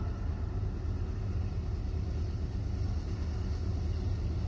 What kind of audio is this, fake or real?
real